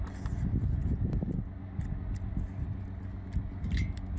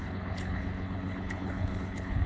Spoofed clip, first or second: second